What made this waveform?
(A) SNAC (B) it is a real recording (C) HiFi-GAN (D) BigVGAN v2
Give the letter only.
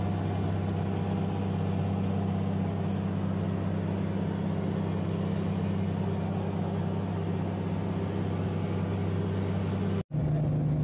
B